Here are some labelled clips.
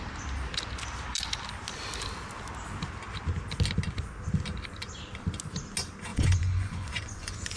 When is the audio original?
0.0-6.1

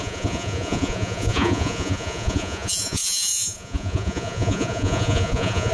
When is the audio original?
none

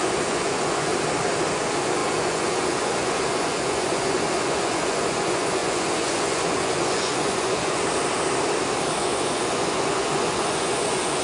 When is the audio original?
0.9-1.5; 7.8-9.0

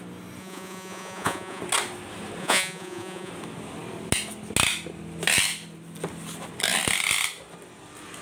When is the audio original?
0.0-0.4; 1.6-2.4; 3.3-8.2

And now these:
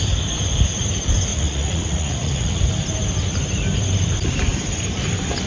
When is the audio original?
0.0-1.3; 2.6-5.5

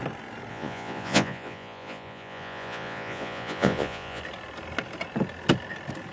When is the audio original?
0.0-0.5; 4.2-6.1